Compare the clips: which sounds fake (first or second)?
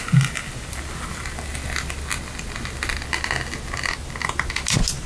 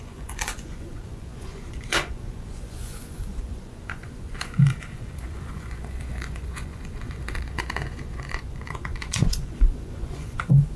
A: second